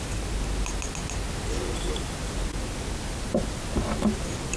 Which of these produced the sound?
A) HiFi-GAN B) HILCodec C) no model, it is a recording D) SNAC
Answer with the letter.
C